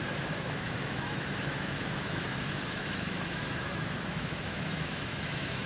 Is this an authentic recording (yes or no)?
no